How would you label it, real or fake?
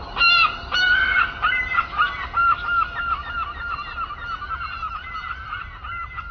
real